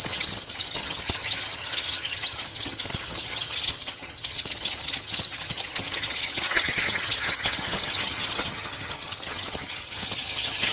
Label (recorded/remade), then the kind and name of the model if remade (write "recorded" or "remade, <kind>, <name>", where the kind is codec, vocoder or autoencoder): remade, vocoder, HiFi-GAN